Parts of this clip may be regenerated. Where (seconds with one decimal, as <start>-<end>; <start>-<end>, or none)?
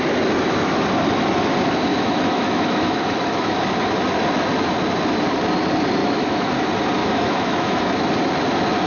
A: 1.9-3.6; 6.0-6.5; 7.0-7.8